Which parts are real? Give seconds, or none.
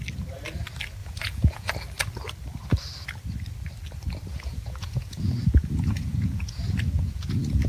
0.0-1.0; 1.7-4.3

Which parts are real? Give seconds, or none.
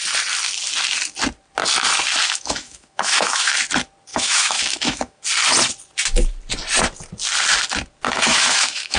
0.0-2.2; 3.5-4.1; 5.2-8.3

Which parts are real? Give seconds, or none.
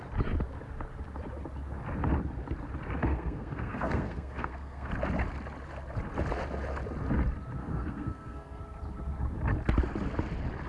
0.0-3.0; 4.9-7.6; 8.6-10.7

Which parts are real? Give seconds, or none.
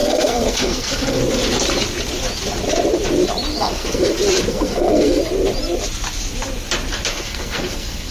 1.2-3.5; 4.1-4.5; 5.2-7.1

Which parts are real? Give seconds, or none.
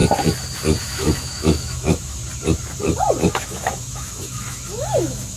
0.0-0.8; 2.2-3.3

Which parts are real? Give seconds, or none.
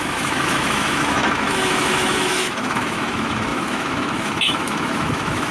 none